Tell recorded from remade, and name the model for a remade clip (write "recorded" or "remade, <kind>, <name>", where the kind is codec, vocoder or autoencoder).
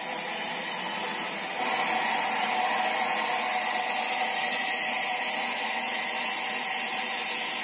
recorded